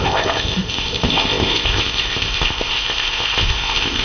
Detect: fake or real fake